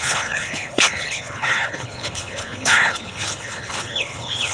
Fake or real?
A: fake